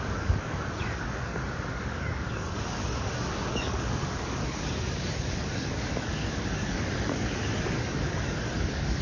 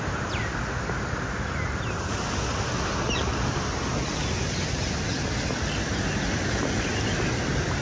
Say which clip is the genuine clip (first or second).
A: second